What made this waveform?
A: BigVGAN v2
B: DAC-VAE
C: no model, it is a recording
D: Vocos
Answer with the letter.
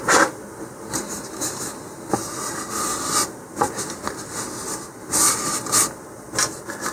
C